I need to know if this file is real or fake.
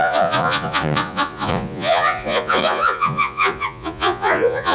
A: fake